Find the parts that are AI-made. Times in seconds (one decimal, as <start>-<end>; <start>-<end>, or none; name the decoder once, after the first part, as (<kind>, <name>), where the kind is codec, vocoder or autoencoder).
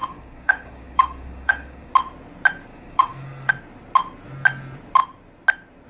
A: 0.0-1.9 (codec, DAC); 2.7-3.5